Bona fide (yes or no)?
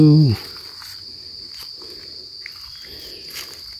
yes